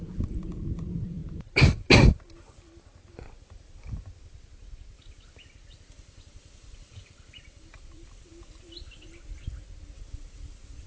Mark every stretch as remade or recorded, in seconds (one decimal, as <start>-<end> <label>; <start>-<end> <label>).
0.0-1.2 remade; 1.2-5.8 recorded; 5.8-8.3 remade; 8.3-10.9 recorded